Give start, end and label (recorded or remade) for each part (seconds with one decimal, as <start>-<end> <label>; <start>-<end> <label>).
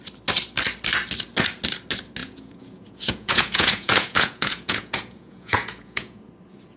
0.0-2.2 recorded; 2.2-6.3 remade; 6.3-6.8 recorded